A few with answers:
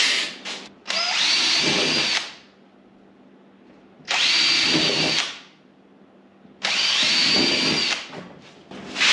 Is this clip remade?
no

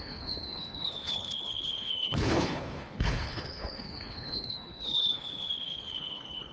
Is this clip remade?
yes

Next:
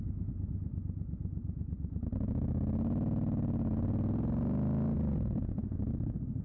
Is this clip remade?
no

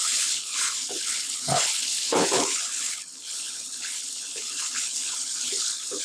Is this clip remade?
yes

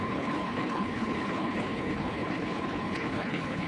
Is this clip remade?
yes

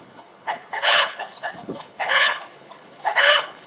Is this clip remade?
yes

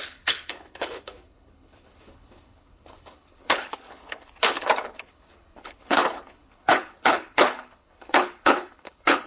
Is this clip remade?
yes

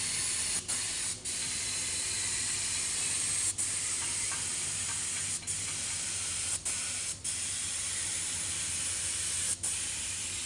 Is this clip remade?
no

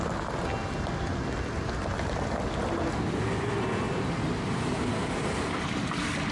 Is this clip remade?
no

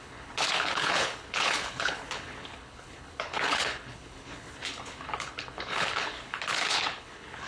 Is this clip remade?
yes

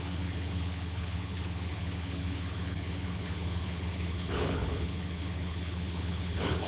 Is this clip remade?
yes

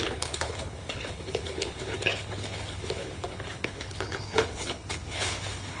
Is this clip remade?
yes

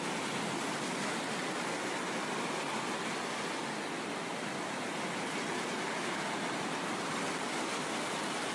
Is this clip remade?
no